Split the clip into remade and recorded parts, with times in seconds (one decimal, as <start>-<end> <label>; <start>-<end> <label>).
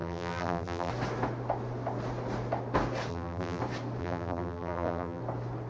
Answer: 0.0-0.9 remade; 0.9-3.1 recorded; 3.1-3.6 remade; 3.6-4.0 recorded; 4.0-5.2 remade; 5.2-5.7 recorded